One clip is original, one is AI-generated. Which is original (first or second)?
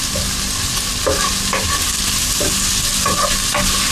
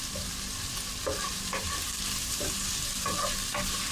first